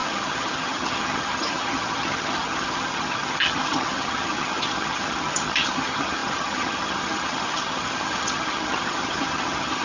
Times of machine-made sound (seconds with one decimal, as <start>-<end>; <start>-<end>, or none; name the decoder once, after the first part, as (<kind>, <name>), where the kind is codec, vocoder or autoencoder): 0.0-9.8 (vocoder, HiFi-GAN)